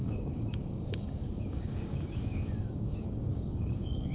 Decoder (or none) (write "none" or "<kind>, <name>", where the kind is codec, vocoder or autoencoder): codec, DAC